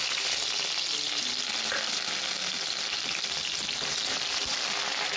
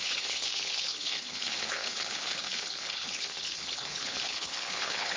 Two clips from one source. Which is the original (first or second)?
first